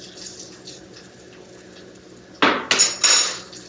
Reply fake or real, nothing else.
real